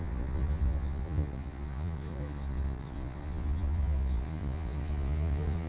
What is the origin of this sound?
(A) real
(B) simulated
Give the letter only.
B